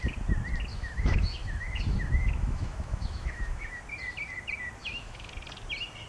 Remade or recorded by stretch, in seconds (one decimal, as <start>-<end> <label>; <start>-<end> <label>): 0.0-0.7 recorded; 0.7-3.8 remade; 3.8-4.8 recorded; 4.8-5.3 remade; 5.3-6.1 recorded